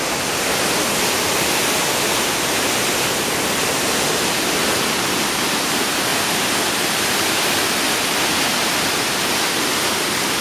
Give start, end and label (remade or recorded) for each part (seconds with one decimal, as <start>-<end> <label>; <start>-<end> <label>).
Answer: 0.0-10.4 recorded